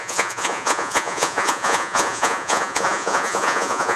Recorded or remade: remade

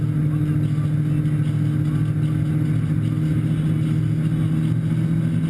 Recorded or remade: recorded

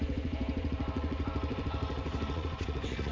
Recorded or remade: remade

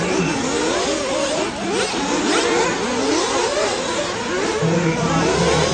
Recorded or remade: recorded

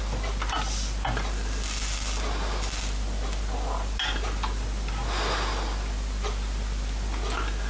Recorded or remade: recorded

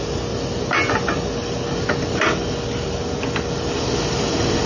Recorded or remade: recorded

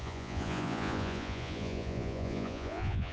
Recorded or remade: remade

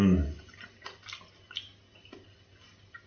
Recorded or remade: recorded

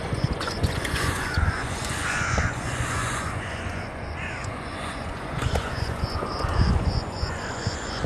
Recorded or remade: remade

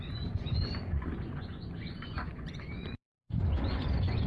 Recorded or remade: remade